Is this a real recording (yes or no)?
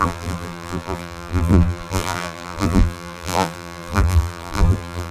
no